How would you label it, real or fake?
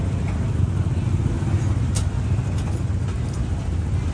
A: real